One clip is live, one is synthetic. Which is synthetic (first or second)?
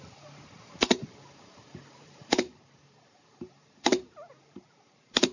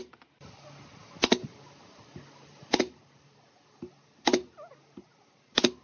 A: first